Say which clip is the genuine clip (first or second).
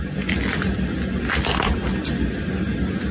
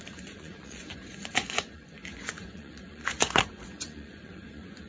first